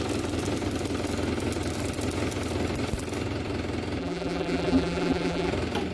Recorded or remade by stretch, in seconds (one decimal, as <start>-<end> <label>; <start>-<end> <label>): 0.0-4.0 recorded; 4.0-5.5 remade; 5.5-5.9 recorded